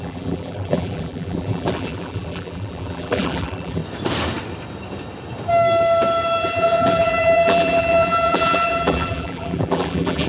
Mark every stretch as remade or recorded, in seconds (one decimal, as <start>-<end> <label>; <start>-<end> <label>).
0.0-3.8 remade; 3.8-6.4 recorded; 6.4-10.3 remade